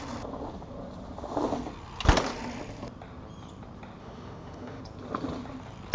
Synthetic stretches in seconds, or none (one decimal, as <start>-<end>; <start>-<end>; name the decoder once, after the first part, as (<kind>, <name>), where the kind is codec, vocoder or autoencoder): 4.0-4.8 (autoencoder, DAC-VAE)